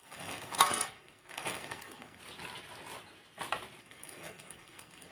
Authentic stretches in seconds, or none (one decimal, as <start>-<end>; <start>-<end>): 2.2-3.8